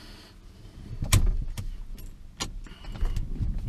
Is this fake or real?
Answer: real